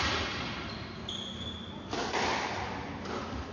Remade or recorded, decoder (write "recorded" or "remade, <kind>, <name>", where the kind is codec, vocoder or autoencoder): recorded